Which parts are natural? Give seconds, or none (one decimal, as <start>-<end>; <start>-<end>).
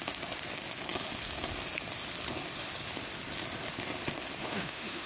0.0-4.4